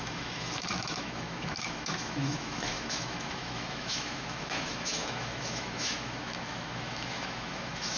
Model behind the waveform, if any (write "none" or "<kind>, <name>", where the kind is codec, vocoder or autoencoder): autoencoder, DAC-VAE